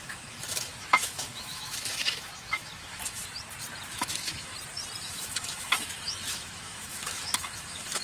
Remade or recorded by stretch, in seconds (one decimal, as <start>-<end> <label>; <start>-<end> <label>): 0.0-3.2 remade; 3.2-3.9 recorded; 3.9-4.5 remade; 4.5-5.0 recorded; 5.0-8.0 remade